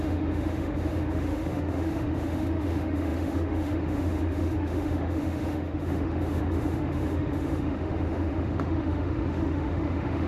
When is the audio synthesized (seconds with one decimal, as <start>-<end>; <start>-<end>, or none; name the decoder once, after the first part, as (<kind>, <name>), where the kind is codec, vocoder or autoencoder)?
0.0-10.3 (autoencoder, DAC-VAE)